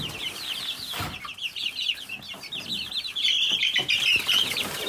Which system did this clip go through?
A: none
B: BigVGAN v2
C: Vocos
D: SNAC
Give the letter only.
A